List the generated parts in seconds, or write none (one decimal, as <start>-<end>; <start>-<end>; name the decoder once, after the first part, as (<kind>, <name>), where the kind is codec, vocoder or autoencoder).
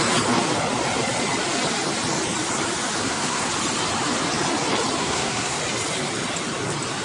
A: 3.0-3.5 (codec, SNAC); 5.0-5.6